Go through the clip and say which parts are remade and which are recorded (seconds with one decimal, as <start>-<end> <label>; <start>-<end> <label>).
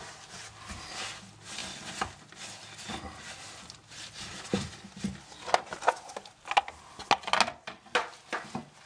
0.0-8.9 recorded